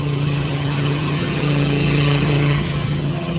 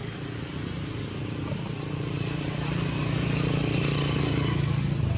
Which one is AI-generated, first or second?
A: first